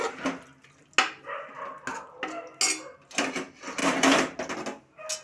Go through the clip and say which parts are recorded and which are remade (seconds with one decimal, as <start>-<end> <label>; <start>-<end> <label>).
0.0-5.2 recorded